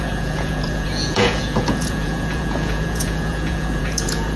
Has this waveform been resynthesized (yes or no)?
yes